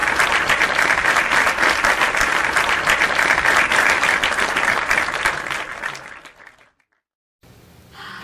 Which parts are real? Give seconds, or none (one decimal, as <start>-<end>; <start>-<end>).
0.0-8.2